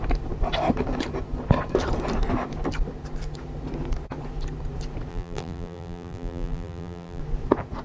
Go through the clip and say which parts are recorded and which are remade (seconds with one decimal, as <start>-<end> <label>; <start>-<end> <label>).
0.0-5.1 recorded; 5.1-7.2 remade; 7.2-7.8 recorded